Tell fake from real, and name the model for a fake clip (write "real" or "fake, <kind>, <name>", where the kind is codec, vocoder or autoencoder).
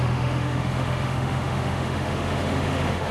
fake, autoencoder, DAC-VAE